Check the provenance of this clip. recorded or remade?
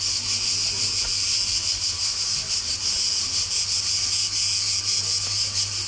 recorded